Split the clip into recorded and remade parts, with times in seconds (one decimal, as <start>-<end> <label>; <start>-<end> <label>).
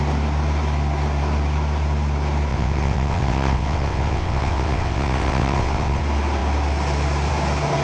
0.0-2.5 recorded; 2.5-6.0 remade; 6.0-7.8 recorded